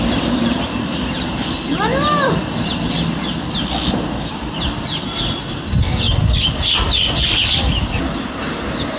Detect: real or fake real